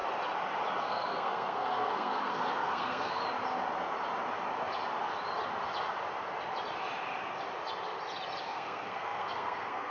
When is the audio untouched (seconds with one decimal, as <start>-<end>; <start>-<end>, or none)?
0.0-0.8; 3.2-8.4